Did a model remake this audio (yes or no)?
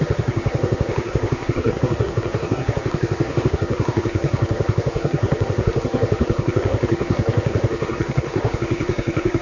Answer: yes